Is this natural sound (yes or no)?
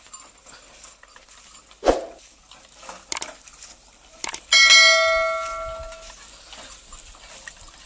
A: yes